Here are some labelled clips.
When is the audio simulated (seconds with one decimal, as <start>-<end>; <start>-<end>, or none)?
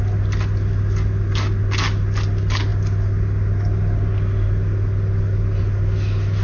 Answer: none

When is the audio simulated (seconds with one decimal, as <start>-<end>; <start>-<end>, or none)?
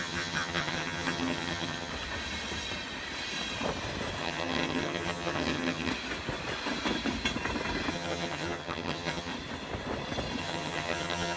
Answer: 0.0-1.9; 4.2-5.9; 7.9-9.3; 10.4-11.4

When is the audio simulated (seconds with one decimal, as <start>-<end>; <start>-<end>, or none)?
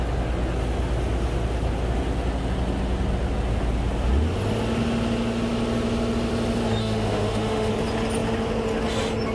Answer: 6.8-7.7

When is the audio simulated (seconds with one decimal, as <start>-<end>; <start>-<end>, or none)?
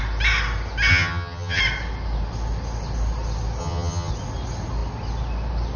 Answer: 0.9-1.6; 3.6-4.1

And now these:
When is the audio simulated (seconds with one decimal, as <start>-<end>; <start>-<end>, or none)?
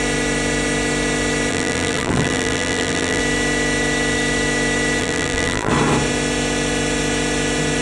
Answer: 1.5-3.2; 5.0-5.7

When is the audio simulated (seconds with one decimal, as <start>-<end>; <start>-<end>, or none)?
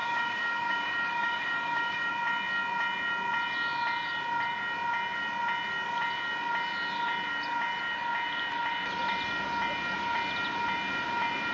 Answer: 0.0-2.1